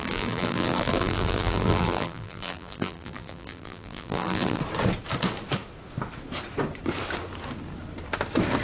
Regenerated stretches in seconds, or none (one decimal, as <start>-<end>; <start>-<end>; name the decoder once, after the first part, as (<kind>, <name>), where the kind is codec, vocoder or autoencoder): 0.0-4.6 (vocoder, BigVGAN v2)